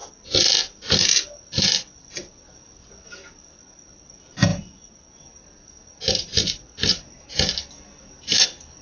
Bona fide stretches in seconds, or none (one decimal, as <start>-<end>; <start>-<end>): 0.0-4.5; 7.7-8.8